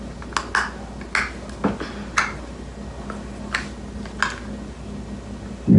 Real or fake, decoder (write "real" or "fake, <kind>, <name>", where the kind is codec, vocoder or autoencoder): real